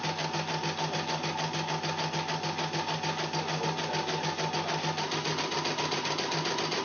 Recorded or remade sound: recorded